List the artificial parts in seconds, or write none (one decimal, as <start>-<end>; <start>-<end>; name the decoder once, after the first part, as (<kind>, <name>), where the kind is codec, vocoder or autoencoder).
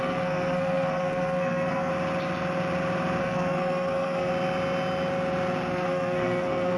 0.0-1.9 (codec, SNAC); 3.2-4.3; 5.7-6.8